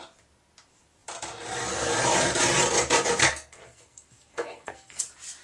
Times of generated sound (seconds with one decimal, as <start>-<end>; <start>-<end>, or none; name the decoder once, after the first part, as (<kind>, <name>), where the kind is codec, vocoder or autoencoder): 3.2-5.0 (codec, SNAC)